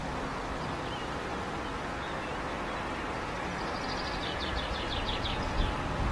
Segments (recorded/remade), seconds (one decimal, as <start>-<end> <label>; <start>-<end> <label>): 0.0-4.3 recorded; 4.3-5.5 remade; 5.5-6.1 recorded